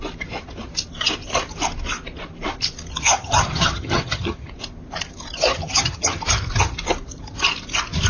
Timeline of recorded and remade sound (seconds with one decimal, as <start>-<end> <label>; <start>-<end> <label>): 0.0-3.0 recorded; 3.0-4.5 remade; 4.5-5.5 recorded; 5.5-6.2 remade; 6.2-8.1 recorded